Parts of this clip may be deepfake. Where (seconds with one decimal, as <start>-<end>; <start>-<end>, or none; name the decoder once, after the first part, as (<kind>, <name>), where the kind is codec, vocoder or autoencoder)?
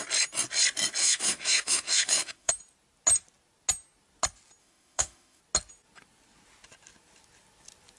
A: 1.0-2.5 (autoencoder, DAC-VAE); 4.6-5.4